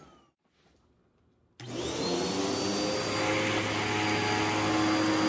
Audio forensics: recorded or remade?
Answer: recorded